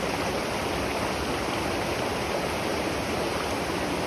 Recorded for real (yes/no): yes